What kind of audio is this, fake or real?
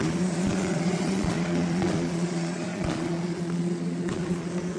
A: fake